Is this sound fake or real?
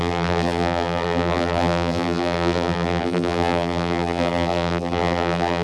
fake